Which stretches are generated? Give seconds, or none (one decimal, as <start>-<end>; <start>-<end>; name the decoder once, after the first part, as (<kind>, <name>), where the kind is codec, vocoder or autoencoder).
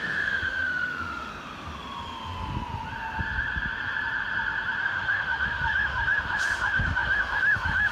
0.0-1.3 (autoencoder, DAC-VAE); 4.8-7.9